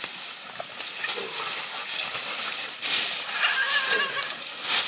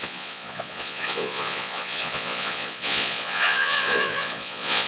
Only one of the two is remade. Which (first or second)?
second